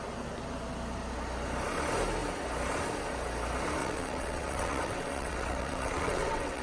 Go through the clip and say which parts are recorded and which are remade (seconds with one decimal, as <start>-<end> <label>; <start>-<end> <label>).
0.0-3.8 recorded; 3.8-6.6 remade